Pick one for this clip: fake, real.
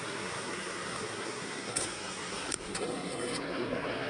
fake